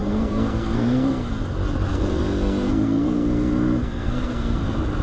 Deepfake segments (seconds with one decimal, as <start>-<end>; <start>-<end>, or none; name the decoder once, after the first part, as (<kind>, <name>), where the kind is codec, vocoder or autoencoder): 0.0-1.3 (codec, SNAC); 1.9-4.6